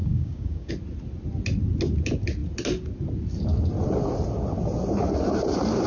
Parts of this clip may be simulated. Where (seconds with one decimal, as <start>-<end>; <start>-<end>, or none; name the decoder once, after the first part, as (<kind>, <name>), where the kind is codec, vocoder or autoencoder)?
0.0-0.7 (codec, DAC)